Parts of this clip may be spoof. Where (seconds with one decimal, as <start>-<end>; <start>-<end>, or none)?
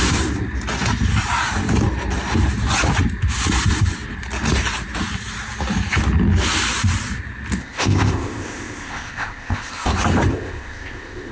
7.6-9.9; 10.3-11.3